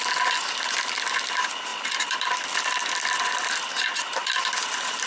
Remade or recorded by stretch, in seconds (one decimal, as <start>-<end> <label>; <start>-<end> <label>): 0.0-1.7 recorded; 1.7-2.9 remade; 2.9-4.1 recorded; 4.1-5.1 remade